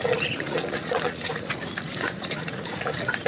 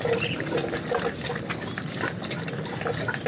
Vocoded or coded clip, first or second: first